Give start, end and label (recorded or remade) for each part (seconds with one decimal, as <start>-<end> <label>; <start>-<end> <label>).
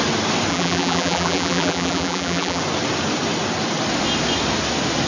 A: 0.0-0.5 recorded; 0.5-2.6 remade; 2.6-5.1 recorded